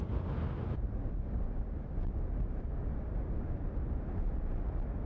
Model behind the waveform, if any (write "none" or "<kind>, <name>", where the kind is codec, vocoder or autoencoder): none